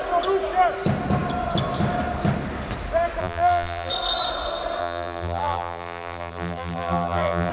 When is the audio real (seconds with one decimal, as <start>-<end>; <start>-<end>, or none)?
0.0-3.2; 3.9-4.8